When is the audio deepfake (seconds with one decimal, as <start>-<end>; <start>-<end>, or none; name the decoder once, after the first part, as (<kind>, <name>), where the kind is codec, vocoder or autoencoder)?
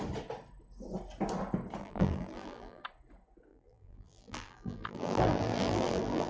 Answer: 1.8-2.8 (vocoder, BigVGAN v2); 3.5-6.3